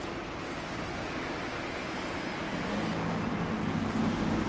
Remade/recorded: recorded